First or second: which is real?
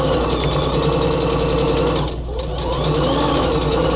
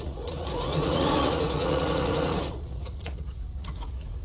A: first